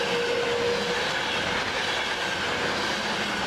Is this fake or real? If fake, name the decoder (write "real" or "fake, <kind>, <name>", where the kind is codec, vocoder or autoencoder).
real